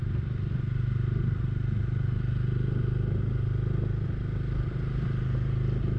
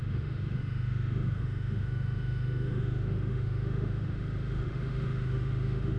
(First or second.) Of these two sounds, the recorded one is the first